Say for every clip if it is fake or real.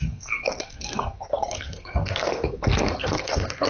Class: fake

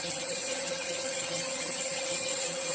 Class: fake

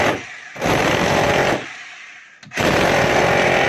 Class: real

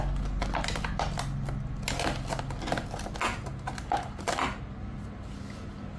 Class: real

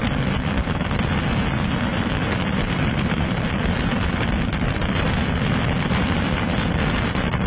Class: real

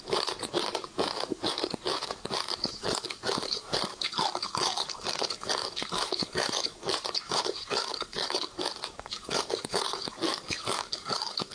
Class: fake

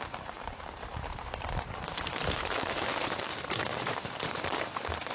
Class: fake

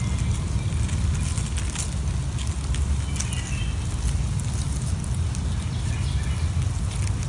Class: real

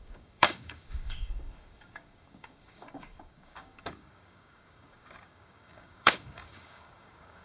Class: fake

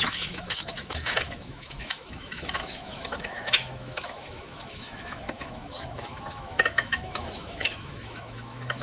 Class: fake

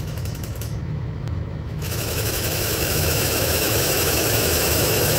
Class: fake